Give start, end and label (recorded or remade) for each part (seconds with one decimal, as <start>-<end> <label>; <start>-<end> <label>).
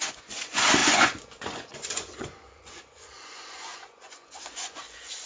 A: 0.0-5.3 remade